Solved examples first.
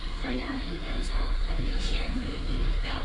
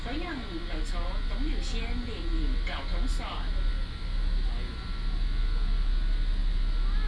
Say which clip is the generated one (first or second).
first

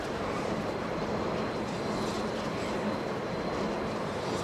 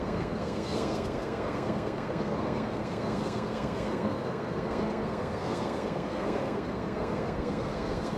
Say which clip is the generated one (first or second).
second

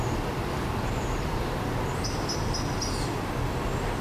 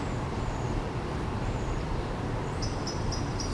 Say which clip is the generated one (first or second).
second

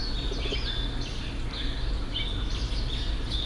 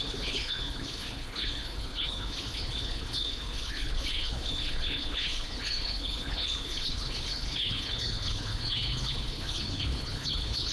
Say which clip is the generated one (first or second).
second